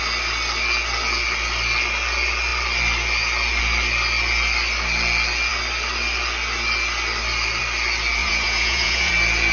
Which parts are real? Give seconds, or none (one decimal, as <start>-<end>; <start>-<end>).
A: 0.0-8.2; 9.1-9.5